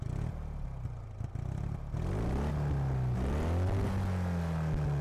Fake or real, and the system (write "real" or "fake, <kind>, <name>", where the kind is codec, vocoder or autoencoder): real